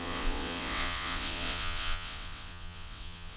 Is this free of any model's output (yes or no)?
no